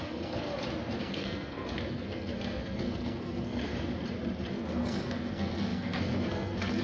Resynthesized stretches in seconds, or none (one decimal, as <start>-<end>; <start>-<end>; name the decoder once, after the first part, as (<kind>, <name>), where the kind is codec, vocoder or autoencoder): 0.0-0.5 (codec, SNAC); 1.0-3.7; 4.5-6.8